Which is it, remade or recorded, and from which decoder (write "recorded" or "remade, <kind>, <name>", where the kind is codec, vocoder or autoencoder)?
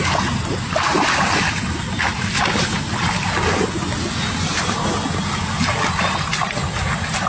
recorded